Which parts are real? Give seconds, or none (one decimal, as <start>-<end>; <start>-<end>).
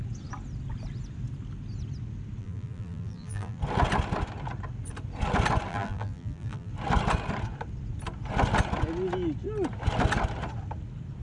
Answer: 0.0-2.4; 3.6-5.7; 6.7-11.2